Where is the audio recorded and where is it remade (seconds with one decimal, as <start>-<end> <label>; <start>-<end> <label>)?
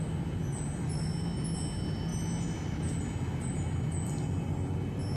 0.0-5.2 recorded